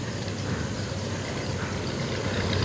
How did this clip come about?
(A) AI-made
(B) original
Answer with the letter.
A